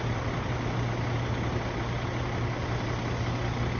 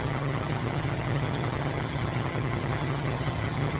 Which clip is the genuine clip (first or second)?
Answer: first